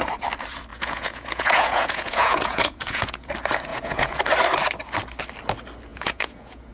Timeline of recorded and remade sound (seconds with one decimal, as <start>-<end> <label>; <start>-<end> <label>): 0.0-0.7 recorded; 0.7-3.3 remade; 3.3-3.7 recorded; 3.7-4.2 remade; 4.2-5.9 recorded; 5.9-6.7 remade